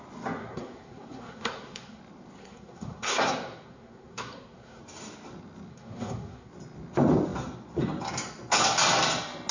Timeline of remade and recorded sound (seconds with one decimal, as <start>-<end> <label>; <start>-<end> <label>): 0.0-0.4 recorded; 0.4-2.0 remade; 2.0-2.4 recorded; 2.4-4.8 remade; 4.8-5.7 recorded; 5.7-6.5 remade; 6.5-9.5 recorded